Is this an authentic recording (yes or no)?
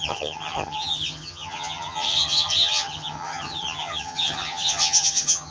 no